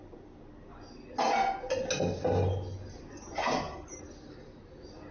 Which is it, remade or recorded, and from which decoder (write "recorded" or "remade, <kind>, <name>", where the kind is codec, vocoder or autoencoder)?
recorded